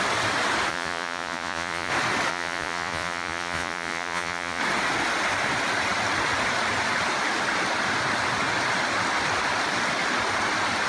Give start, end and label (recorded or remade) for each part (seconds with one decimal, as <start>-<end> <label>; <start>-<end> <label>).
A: 0.0-0.7 recorded; 0.7-1.9 remade; 1.9-2.3 recorded; 2.3-4.6 remade; 4.6-10.9 recorded

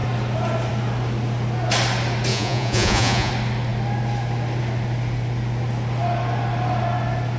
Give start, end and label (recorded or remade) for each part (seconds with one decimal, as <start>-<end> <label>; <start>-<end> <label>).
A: 0.0-2.3 recorded; 2.3-3.3 remade; 3.3-7.4 recorded

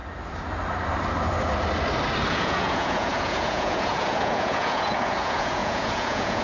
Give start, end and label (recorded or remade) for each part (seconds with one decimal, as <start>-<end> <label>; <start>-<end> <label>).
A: 0.0-2.3 recorded; 2.3-6.4 remade

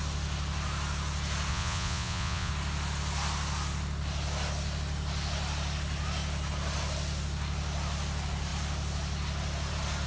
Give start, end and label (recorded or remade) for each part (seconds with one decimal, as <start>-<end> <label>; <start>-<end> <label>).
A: 0.0-1.5 recorded; 1.5-2.5 remade; 2.5-10.1 recorded

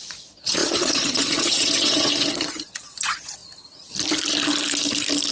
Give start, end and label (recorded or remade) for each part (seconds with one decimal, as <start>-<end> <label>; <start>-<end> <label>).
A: 0.0-3.4 remade; 3.4-5.3 recorded